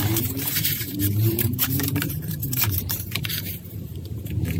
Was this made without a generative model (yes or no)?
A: no